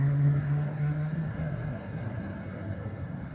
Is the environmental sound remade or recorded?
remade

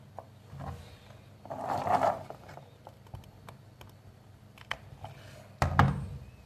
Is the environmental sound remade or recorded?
recorded